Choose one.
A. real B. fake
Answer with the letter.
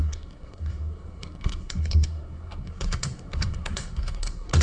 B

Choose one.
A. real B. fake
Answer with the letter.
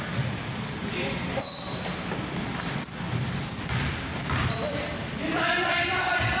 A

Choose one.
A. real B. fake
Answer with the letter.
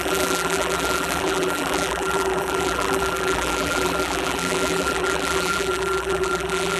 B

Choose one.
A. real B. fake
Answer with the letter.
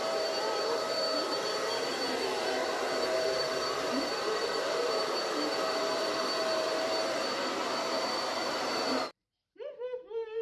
B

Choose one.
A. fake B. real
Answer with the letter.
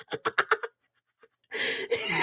B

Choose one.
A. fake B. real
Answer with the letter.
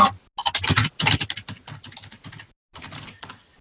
B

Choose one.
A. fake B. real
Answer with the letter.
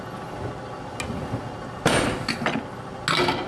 B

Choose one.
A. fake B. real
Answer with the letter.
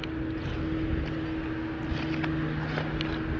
B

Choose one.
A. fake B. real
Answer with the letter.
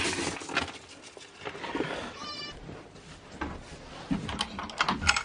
B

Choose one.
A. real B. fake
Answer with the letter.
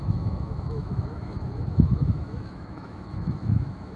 B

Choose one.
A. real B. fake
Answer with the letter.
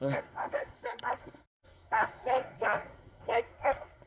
B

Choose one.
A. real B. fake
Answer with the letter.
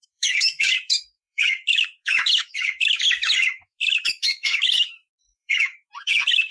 B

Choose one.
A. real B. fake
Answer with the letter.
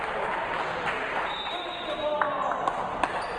A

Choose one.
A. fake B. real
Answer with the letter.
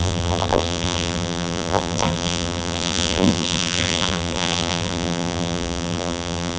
A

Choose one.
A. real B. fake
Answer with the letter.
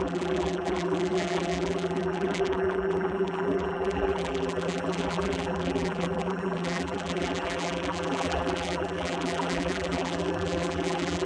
B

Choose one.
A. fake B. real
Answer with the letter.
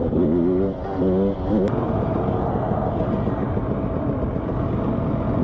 B